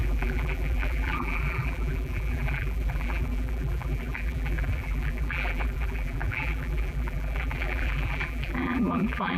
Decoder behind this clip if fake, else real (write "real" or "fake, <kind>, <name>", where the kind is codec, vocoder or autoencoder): fake, vocoder, BigVGAN v2